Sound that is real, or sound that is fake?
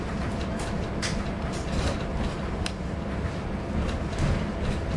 real